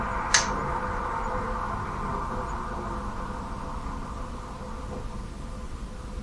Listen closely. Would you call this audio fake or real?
real